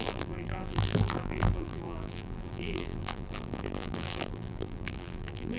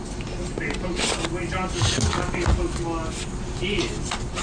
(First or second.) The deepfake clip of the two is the first